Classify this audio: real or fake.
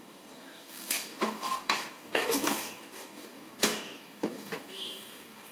fake